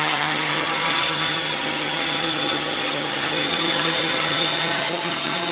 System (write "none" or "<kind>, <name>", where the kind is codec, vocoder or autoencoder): vocoder, HiFi-GAN